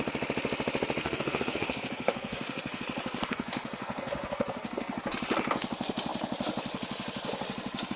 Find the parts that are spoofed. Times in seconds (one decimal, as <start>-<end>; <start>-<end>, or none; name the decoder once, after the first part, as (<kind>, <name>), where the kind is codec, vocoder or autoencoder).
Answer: 1.0-2.8 (codec, SNAC); 3.3-4.9